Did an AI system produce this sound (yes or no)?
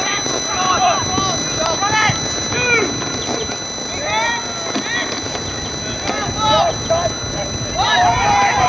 no